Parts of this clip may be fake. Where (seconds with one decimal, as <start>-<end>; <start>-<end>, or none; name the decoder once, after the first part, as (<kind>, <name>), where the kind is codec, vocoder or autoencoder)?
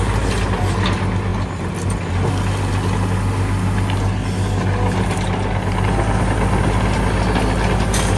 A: none